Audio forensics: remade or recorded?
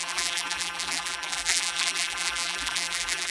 remade